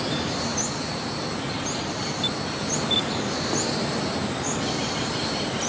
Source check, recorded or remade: recorded